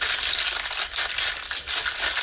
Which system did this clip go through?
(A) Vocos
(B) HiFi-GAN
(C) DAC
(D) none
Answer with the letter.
D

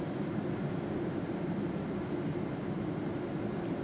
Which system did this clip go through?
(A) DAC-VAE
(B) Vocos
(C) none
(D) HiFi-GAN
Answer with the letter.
C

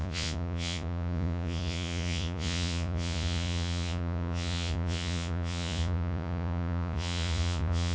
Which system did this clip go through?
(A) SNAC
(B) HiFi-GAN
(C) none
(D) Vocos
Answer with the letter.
D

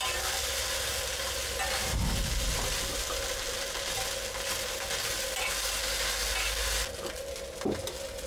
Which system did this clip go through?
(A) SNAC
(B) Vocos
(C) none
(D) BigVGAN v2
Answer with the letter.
C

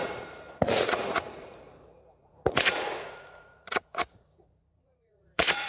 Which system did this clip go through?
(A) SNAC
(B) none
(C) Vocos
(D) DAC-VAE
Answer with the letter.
C